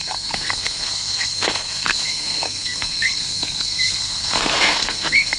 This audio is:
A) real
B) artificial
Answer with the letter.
B